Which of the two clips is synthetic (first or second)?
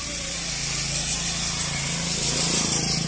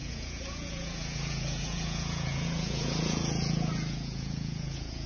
second